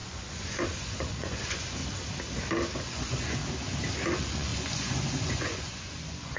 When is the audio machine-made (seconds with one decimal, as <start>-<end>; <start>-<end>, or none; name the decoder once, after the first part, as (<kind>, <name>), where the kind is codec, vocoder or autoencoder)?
0.0-1.8 (vocoder, Vocos); 2.8-3.4; 4.1-6.4